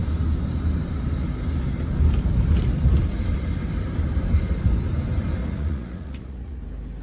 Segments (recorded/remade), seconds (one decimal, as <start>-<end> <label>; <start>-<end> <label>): 0.0-5.4 recorded; 5.4-6.6 remade; 6.6-7.0 recorded